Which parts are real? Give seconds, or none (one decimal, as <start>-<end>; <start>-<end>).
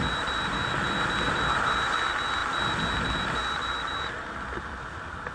0.0-5.3